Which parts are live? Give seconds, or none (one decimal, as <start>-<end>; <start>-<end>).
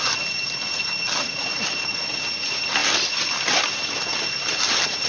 0.0-5.1